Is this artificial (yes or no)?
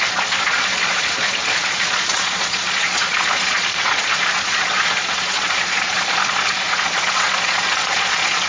yes